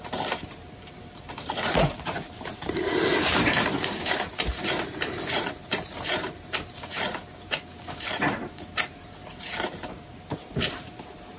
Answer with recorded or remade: remade